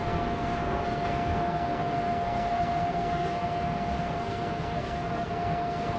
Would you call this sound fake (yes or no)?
yes